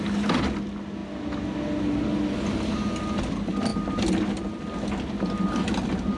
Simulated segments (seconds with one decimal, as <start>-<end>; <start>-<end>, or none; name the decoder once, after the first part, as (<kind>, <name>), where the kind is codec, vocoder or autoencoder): none